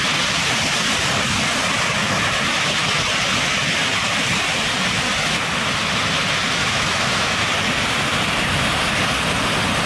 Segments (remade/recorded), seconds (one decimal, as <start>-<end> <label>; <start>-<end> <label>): 0.0-6.6 recorded; 6.6-7.5 remade; 7.5-9.9 recorded